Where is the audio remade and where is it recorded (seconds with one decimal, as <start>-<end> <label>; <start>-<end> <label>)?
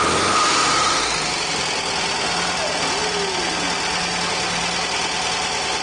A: 0.0-5.8 recorded